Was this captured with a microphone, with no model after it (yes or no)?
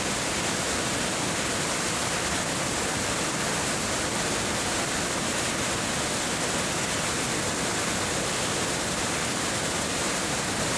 yes